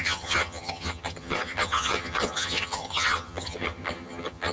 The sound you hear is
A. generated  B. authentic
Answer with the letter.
A